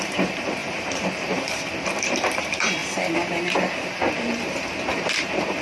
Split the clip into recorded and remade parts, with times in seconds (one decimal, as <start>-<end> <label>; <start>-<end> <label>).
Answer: 0.0-2.8 remade; 2.8-4.1 recorded; 4.1-5.6 remade